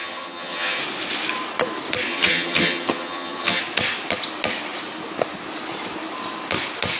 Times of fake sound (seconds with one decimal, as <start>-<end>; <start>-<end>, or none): 0.0-0.8; 2.1-3.6